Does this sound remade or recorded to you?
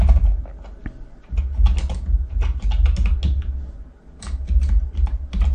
recorded